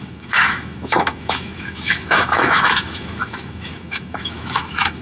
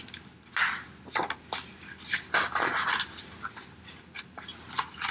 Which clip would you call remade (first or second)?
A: first